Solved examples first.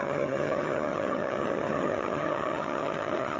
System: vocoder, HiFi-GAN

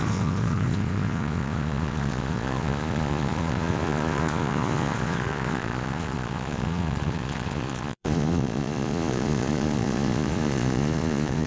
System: vocoder, Vocos